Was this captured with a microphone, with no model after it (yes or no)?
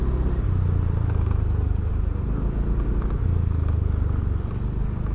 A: yes